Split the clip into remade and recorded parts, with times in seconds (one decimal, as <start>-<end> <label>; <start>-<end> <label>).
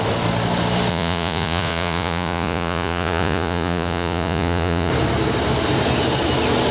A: 0.0-0.9 recorded; 0.9-4.9 remade; 4.9-6.7 recorded